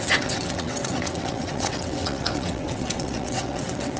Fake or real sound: fake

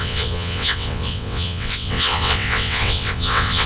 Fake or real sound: fake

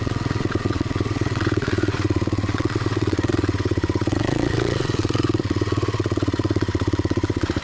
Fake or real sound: fake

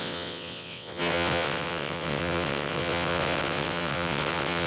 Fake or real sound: fake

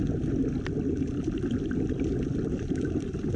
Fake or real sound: real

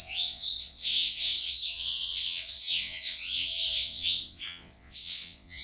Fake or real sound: fake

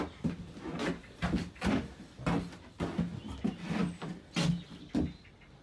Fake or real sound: real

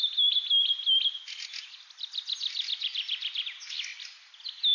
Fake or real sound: real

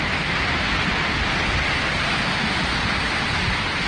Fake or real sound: real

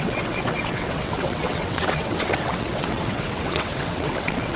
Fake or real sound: fake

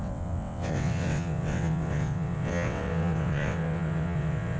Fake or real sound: fake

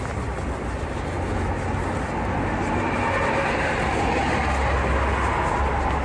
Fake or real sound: real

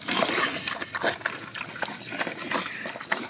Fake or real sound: real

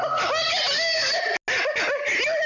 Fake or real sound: real